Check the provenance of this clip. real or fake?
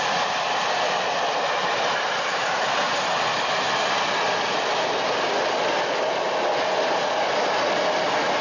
real